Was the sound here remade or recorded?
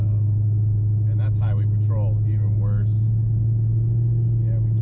remade